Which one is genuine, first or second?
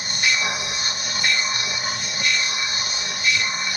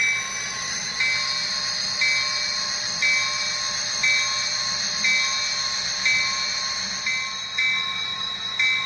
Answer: second